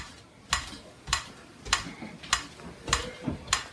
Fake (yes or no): no